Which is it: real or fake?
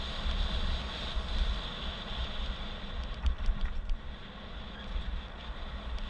real